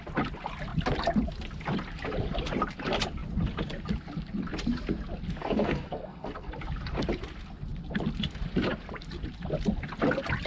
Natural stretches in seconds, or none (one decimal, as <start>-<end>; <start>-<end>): 0.0-5.4; 6.5-10.5